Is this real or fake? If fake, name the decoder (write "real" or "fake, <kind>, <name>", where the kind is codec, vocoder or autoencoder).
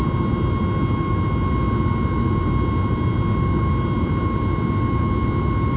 real